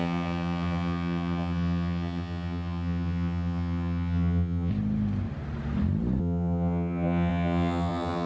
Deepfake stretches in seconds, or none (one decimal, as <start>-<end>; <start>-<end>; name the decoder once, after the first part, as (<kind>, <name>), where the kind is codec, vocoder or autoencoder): 0.0-4.7 (vocoder, HiFi-GAN); 6.2-8.3